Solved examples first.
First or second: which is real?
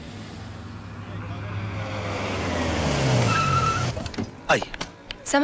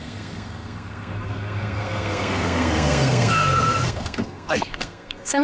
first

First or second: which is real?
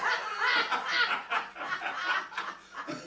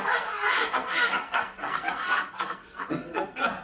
first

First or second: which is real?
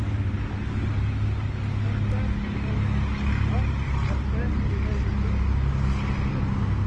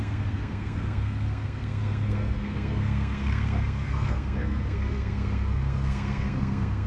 first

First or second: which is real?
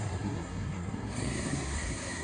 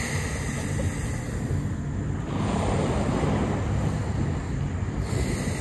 second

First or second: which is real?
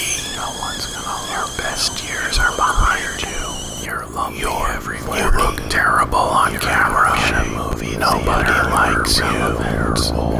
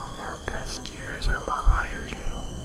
first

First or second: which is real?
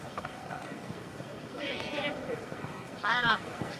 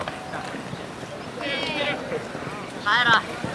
second